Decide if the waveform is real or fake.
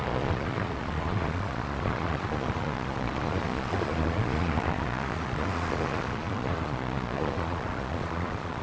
fake